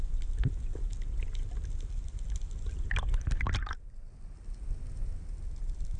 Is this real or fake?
real